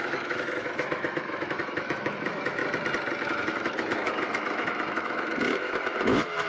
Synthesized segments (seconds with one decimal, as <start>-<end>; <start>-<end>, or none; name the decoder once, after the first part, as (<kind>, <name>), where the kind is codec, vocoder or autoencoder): 0.0-2.6 (autoencoder, DAC-VAE); 3.2-6.5